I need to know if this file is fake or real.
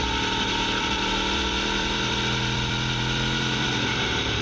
fake